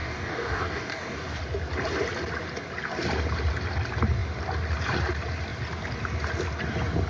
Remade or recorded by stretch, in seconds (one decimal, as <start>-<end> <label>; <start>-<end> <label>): 0.0-1.4 remade; 1.4-7.1 recorded